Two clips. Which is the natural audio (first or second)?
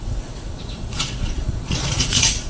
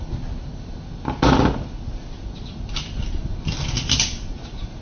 second